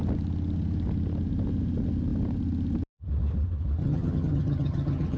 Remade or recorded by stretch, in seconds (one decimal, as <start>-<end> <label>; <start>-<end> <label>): 0.0-3.8 recorded; 3.8-5.2 remade